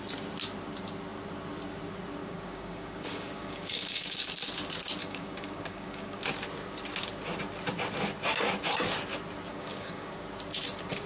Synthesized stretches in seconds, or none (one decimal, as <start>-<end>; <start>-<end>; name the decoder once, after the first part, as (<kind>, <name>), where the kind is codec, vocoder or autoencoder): 2.2-4.3 (codec, DAC); 5.0-6.2; 9.5-10.2